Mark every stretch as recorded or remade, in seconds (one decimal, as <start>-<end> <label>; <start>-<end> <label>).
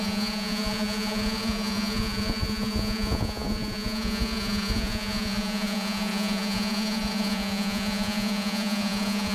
0.0-9.3 remade